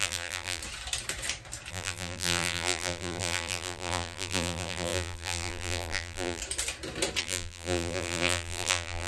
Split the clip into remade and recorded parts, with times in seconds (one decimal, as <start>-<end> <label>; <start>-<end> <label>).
0.0-0.6 remade; 0.6-1.7 recorded; 1.7-6.4 remade; 6.4-7.2 recorded; 7.2-9.1 remade